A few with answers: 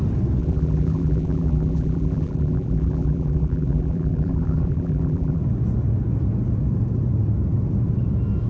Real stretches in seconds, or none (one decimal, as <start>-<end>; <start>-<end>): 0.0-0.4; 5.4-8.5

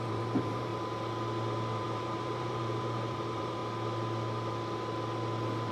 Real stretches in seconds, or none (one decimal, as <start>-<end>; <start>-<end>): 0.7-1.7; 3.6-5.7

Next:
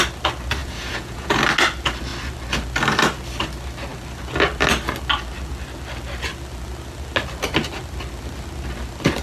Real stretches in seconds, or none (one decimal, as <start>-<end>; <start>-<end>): 0.0-0.6; 1.4-9.2

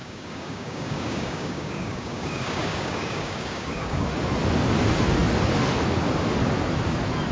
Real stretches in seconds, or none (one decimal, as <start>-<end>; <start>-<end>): 4.1-7.3